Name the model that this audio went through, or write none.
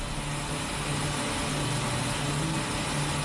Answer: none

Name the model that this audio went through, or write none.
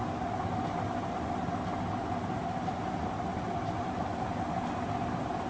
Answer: none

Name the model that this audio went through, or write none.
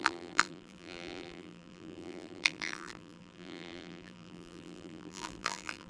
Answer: vocoder, BigVGAN v2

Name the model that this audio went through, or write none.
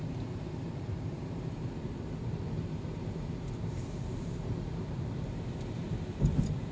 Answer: vocoder, BigVGAN v2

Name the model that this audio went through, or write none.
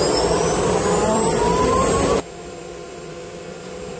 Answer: vocoder, BigVGAN v2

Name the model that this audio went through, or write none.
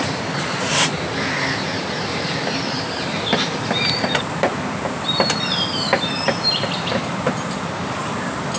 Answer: vocoder, BigVGAN v2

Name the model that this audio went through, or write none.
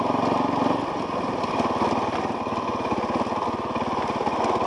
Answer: none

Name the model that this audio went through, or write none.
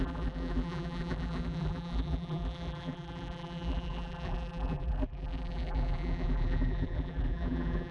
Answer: vocoder, BigVGAN v2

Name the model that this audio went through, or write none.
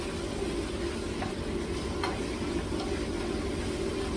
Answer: none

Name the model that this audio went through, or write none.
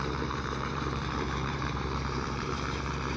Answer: vocoder, BigVGAN v2